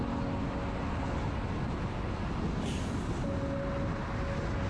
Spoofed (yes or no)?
no